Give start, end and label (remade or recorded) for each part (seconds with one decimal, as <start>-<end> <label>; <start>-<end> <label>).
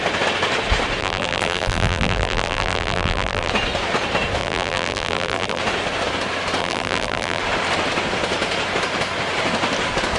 0.0-1.0 recorded; 1.0-3.5 remade; 3.5-4.4 recorded; 4.4-5.6 remade; 5.6-6.6 recorded; 6.6-7.4 remade; 7.4-10.2 recorded